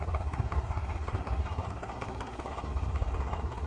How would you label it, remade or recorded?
remade